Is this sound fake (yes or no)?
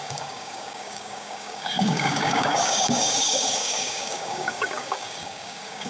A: yes